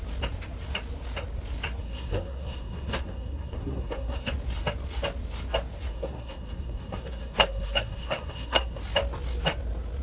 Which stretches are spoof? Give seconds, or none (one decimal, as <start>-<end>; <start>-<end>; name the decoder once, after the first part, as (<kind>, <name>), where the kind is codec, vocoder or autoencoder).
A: 1.8-4.3 (codec, SNAC); 5.9-8.8